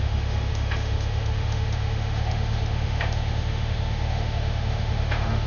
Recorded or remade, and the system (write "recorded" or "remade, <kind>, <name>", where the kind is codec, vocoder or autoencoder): remade, autoencoder, DAC-VAE